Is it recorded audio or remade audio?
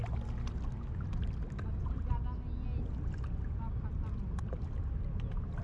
recorded